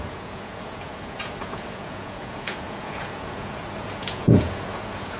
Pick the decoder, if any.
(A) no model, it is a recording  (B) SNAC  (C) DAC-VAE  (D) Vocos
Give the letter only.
D